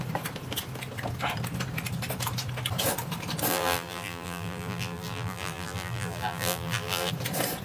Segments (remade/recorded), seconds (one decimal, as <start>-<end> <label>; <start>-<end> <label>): 0.0-3.5 recorded; 3.5-7.1 remade; 7.1-7.6 recorded